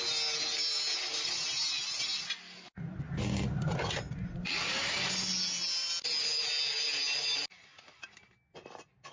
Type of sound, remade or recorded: recorded